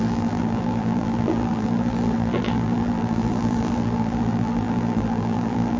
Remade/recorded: remade